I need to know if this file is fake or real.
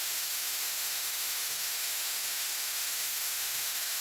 fake